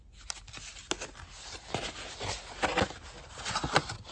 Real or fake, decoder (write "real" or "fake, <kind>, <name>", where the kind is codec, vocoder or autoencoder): real